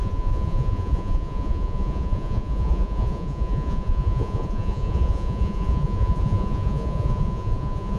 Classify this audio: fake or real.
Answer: fake